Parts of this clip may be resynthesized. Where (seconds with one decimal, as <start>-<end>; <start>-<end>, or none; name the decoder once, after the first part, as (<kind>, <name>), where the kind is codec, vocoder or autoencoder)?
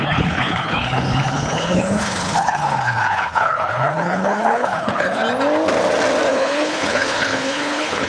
0.0-5.2 (codec, HILCodec); 6.3-8.1